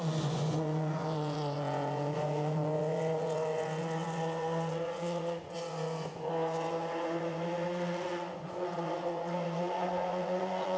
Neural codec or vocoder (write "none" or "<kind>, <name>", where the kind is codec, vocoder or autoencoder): vocoder, Vocos